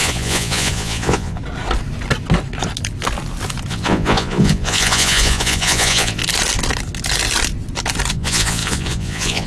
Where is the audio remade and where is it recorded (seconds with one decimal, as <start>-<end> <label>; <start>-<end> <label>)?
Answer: 0.0-1.4 remade; 1.4-3.7 recorded; 3.7-6.2 remade; 6.2-8.1 recorded; 8.1-9.5 remade